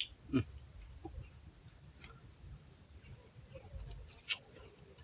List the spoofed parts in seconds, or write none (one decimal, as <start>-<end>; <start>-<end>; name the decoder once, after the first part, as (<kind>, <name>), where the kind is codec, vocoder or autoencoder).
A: none